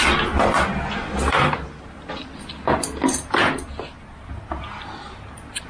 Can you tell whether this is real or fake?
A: real